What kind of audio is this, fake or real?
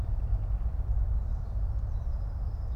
fake